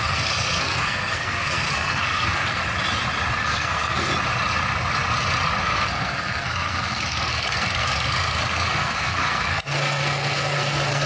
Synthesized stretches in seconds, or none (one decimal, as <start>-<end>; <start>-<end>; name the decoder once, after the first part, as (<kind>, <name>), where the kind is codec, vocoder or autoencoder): 0.0-2.6 (codec, SNAC); 3.4-4.1; 5.6-11.1